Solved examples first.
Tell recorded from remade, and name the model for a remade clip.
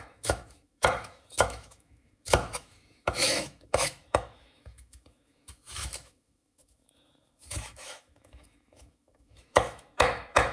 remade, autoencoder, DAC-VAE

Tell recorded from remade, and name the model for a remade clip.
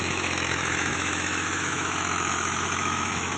remade, autoencoder, DAC-VAE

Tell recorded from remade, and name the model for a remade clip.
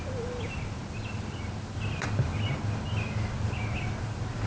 recorded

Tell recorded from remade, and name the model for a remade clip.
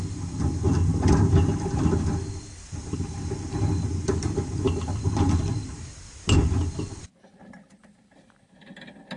recorded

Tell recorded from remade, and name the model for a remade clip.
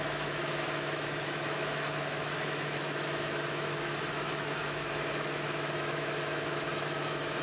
remade, autoencoder, DAC-VAE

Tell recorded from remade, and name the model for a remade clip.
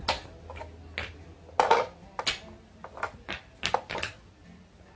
recorded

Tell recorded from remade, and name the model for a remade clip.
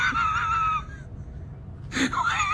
recorded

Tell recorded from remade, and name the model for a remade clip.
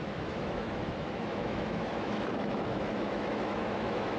remade, autoencoder, DAC-VAE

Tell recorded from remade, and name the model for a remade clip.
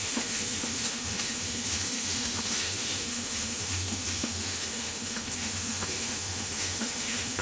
remade, autoencoder, DAC-VAE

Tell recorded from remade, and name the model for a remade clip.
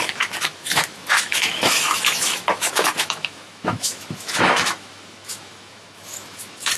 remade, autoencoder, DAC-VAE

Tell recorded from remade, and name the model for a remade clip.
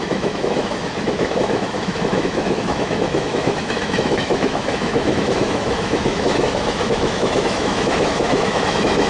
remade, autoencoder, DAC-VAE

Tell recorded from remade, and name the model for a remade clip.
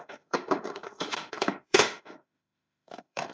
remade, autoencoder, DAC-VAE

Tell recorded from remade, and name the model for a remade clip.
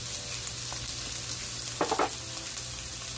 recorded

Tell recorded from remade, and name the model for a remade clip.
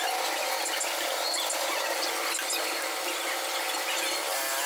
recorded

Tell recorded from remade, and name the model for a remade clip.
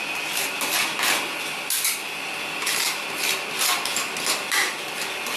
recorded